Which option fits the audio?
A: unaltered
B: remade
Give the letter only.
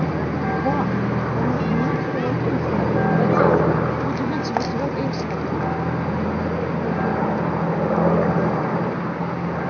A